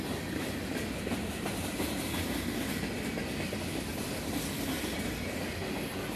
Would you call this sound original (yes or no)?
yes